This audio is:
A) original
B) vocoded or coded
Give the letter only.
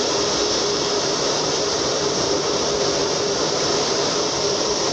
B